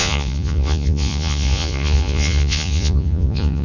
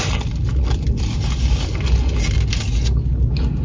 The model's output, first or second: first